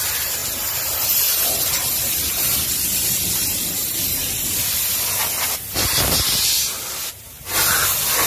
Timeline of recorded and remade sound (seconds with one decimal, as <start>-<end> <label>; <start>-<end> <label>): 0.0-8.3 recorded